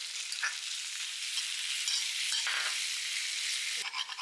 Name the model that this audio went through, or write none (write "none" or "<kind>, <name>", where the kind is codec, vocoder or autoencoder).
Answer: none